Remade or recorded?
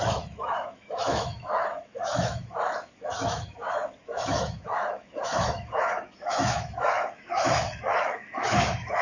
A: remade